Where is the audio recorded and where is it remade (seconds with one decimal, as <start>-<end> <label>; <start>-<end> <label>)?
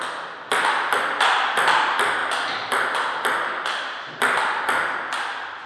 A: 0.0-5.7 recorded